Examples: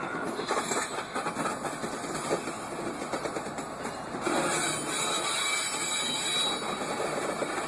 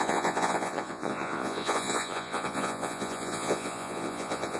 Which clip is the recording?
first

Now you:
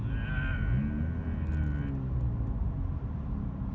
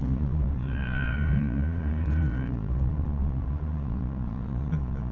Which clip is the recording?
first